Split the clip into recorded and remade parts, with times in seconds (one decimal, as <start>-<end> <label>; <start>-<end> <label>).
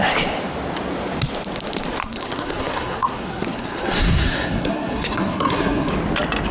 0.0-2.0 recorded; 2.0-5.9 remade; 5.9-6.5 recorded